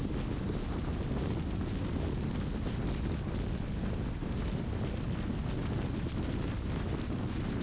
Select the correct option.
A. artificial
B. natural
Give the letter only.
B